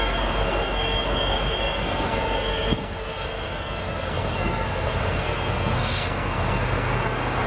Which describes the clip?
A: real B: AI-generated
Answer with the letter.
B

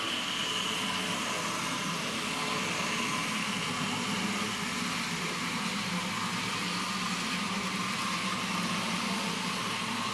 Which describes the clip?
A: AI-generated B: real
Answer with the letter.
B